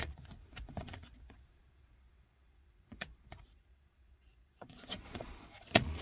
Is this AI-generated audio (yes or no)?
yes